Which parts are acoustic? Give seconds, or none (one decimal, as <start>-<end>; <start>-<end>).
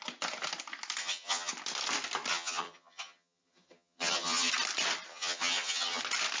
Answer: 0.0-1.0; 1.5-2.3; 4.5-5.1; 6.0-6.4